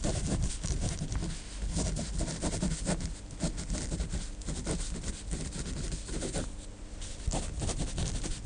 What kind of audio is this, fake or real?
real